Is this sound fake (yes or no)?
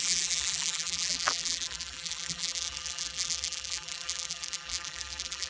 yes